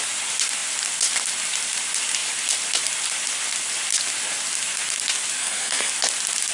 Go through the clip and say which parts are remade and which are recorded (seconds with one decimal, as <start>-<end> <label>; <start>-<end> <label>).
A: 0.0-5.4 recorded; 5.4-5.9 remade; 5.9-6.5 recorded